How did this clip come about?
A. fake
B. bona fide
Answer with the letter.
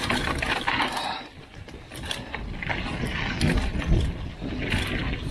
B